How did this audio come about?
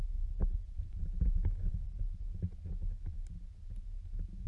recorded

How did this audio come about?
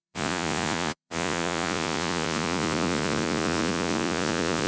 remade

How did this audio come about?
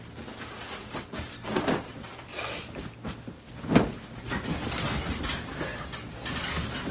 recorded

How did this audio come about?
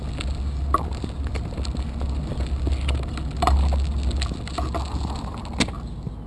recorded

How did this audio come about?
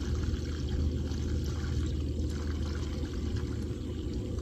recorded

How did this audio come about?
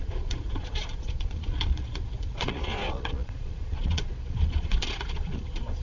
remade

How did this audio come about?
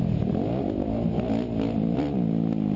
recorded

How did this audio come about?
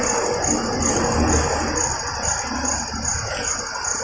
recorded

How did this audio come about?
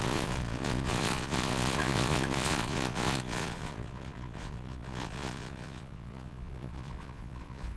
remade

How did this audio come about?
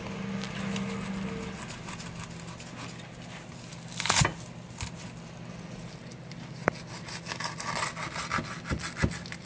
recorded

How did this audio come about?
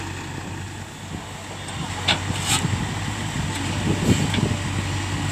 recorded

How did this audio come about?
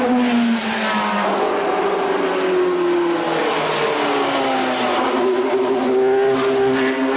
recorded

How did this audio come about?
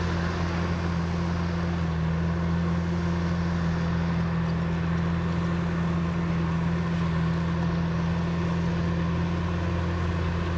recorded